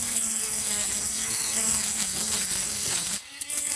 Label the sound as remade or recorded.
remade